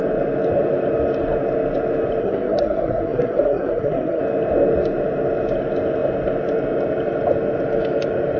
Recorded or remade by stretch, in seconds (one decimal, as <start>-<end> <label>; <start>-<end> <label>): 0.0-2.2 recorded; 2.2-4.2 remade; 4.2-8.4 recorded